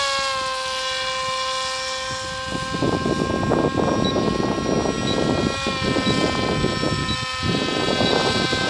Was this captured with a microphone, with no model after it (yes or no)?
yes